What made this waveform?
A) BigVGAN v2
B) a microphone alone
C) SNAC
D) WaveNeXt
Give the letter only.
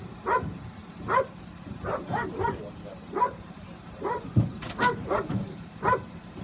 A